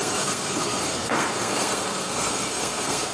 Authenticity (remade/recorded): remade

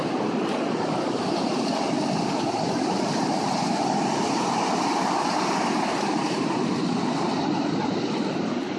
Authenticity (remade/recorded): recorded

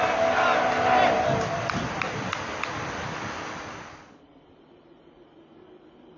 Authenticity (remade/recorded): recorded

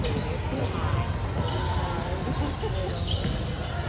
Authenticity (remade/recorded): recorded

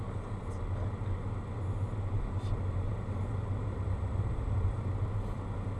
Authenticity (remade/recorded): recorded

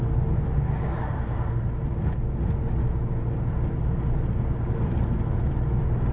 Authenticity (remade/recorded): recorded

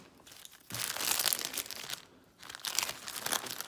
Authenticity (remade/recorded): recorded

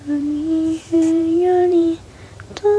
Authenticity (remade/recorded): remade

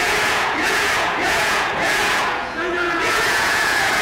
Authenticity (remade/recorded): remade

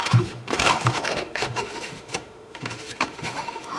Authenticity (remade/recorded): remade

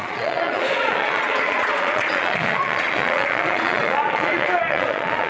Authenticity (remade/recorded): remade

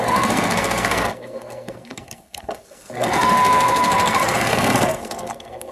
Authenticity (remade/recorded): remade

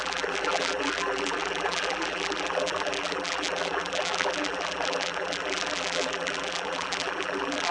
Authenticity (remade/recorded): remade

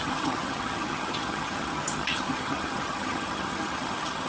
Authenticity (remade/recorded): remade